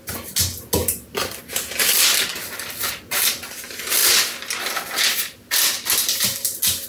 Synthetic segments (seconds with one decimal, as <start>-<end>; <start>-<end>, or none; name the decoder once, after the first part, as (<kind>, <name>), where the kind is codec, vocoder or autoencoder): 0.8-1.4 (vocoder, BigVGAN v2); 2.3-3.6